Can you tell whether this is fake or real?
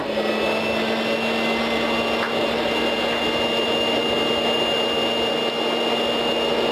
real